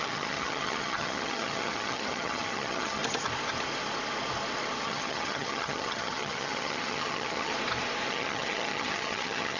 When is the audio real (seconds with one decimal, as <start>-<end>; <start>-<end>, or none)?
3.0-4.8; 7.5-8.1